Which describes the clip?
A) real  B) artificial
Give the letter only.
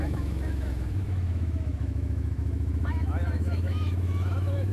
B